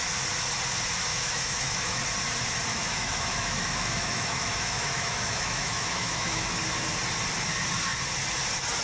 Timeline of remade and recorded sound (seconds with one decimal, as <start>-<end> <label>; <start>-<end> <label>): 0.0-1.1 recorded; 1.1-2.0 remade; 2.0-2.7 recorded; 2.7-6.6 remade; 6.6-8.8 recorded